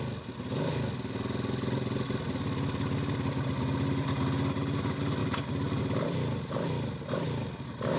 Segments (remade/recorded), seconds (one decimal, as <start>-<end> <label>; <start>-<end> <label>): 0.0-5.2 recorded; 5.2-5.8 remade; 5.8-8.0 recorded